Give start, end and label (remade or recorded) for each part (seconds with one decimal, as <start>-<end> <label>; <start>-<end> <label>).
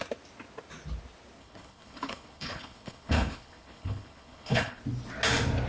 0.0-1.4 recorded; 1.4-4.8 remade; 4.8-5.7 recorded